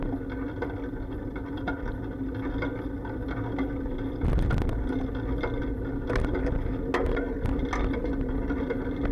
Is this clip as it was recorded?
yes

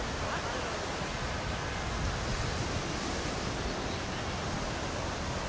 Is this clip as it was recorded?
yes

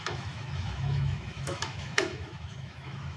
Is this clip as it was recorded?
no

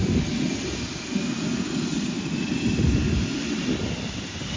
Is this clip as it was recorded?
yes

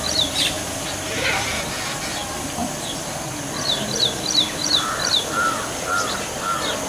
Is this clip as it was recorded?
yes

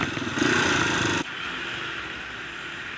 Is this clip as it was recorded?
yes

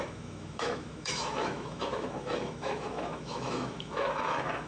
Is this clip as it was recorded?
no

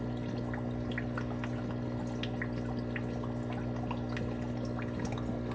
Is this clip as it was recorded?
yes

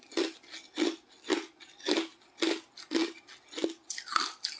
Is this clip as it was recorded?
yes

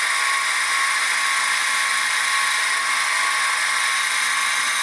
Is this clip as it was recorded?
yes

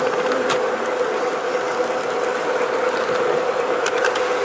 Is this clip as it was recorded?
yes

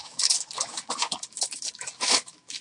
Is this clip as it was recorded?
no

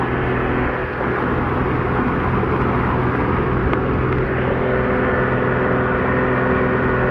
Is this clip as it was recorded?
yes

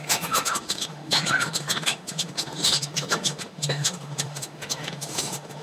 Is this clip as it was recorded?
no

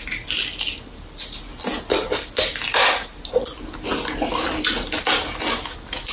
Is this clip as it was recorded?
yes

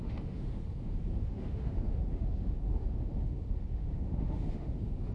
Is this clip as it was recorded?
no